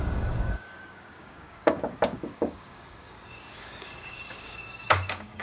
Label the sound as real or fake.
fake